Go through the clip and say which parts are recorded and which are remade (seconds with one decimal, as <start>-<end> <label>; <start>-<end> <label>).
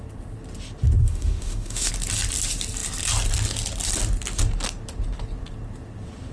0.0-1.0 recorded; 1.0-1.9 remade; 1.9-6.3 recorded